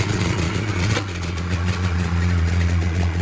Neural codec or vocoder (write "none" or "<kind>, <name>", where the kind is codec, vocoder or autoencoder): vocoder, Vocos